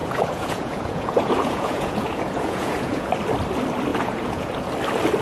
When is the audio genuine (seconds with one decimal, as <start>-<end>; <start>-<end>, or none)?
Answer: 3.1-3.9; 4.7-5.2